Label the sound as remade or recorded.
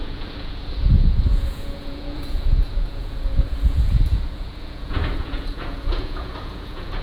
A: remade